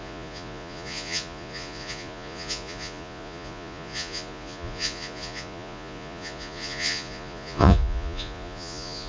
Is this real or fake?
fake